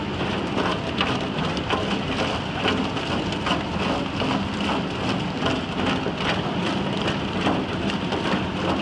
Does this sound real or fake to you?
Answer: real